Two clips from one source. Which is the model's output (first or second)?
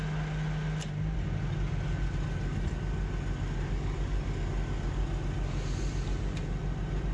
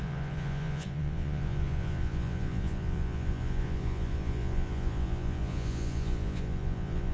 second